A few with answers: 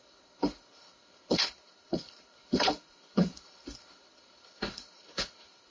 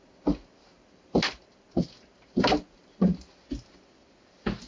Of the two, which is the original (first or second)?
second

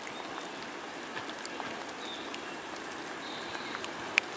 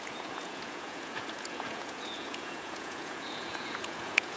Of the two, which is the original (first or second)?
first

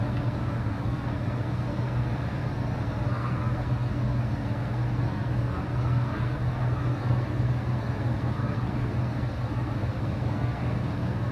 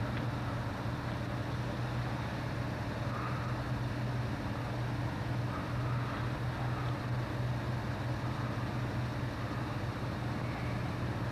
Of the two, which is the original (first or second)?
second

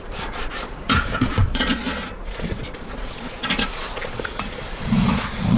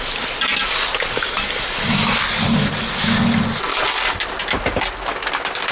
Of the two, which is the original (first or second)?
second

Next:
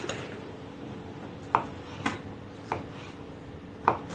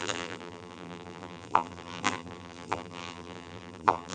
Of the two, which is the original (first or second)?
first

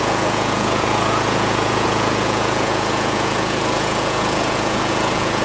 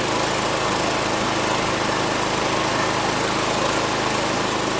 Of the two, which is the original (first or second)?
second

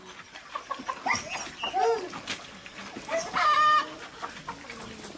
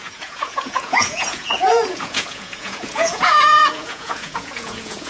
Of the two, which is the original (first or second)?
first